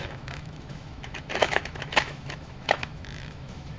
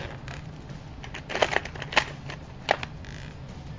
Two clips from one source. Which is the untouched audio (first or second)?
second